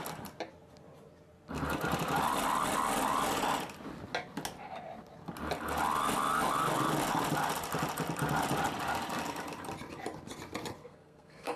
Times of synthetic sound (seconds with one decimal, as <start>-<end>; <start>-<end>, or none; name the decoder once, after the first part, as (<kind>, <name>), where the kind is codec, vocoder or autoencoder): 10.8-11.6 (codec, SNAC)

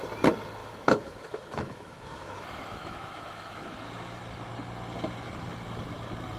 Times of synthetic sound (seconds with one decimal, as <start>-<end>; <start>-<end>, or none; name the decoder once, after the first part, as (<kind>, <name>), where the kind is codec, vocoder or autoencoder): 0.6-4.2 (autoencoder, DAC-VAE)